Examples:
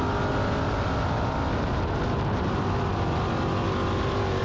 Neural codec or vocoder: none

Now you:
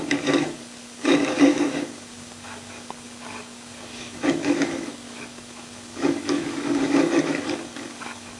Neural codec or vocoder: codec, DAC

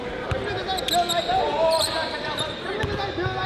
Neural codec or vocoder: none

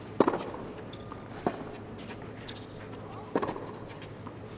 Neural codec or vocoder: none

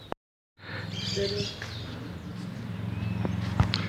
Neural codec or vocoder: none